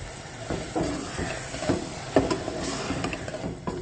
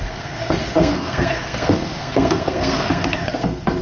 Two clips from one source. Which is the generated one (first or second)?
second